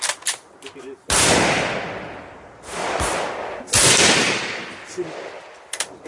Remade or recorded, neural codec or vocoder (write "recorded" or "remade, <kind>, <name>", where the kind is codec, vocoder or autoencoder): recorded